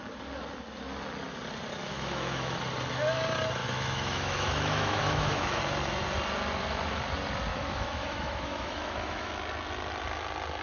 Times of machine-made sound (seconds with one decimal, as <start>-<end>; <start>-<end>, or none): 1.8-2.6; 3.6-5.6; 7.5-9.3

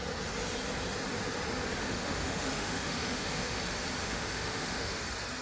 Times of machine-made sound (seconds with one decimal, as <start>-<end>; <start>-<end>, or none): 1.8-3.6; 4.0-5.0

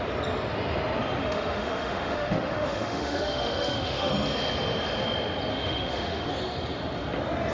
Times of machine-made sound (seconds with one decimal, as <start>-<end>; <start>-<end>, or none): 1.2-4.1; 5.5-6.3

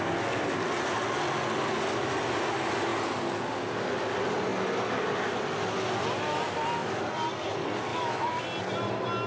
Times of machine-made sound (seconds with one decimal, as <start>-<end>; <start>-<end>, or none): 7.9-8.4